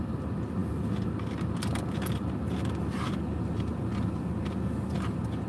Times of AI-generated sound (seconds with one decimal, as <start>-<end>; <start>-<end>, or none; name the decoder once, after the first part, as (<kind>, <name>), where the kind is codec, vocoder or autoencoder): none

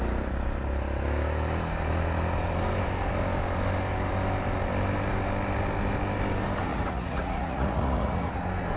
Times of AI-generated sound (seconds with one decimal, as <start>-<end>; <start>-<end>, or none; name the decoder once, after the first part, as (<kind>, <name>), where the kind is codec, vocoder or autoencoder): 6.7-8.4 (vocoder, Vocos)

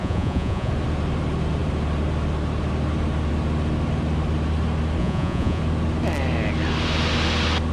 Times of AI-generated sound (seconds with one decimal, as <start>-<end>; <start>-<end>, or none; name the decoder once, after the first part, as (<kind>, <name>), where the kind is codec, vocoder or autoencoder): 0.0-0.7 (vocoder, Vocos); 5.0-5.6